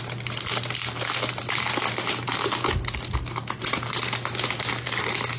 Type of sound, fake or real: real